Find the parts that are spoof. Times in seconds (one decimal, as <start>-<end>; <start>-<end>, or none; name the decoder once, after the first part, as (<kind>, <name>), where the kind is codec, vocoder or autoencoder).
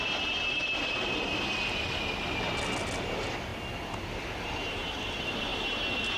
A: none